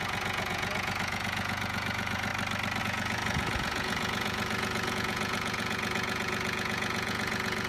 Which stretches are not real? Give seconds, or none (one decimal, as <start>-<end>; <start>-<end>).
0.0-2.3; 2.8-7.7